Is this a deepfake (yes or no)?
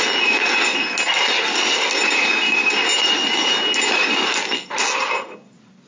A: no